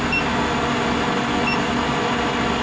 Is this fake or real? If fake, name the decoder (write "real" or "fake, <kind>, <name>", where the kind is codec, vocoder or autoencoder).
real